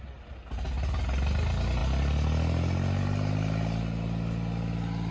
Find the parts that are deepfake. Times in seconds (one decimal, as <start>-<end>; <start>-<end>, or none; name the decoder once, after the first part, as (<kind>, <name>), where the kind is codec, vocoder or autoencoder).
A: none